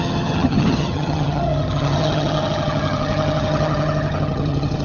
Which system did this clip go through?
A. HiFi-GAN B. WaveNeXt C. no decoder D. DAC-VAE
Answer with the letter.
A